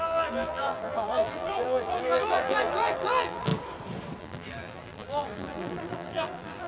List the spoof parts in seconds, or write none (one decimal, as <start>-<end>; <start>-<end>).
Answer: 0.0-3.5; 4.2-6.7